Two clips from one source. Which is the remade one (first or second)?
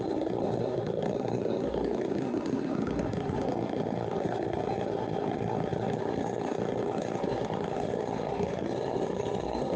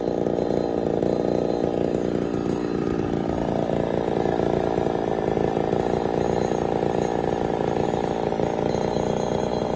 first